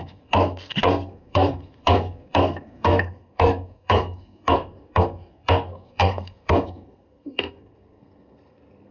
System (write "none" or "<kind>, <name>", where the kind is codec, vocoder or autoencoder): codec, SNAC